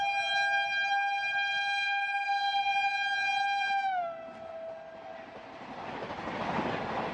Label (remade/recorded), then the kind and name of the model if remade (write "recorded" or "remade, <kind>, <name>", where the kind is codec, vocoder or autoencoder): recorded